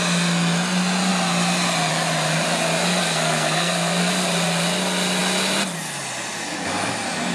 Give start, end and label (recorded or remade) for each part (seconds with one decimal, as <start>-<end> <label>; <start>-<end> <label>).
0.0-3.0 recorded; 3.0-4.1 remade; 4.1-7.3 recorded